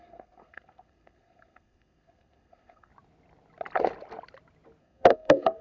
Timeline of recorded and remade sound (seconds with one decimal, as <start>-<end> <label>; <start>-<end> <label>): 0.0-2.9 remade; 2.9-4.8 recorded; 4.8-5.6 remade

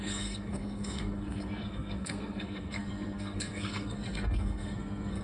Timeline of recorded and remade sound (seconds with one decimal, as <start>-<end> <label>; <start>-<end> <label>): 0.0-5.2 remade